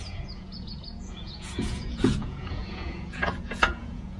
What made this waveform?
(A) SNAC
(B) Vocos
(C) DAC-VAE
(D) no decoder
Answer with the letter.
B